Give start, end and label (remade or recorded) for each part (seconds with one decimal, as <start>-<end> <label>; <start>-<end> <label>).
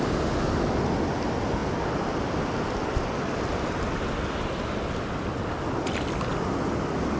0.0-7.2 recorded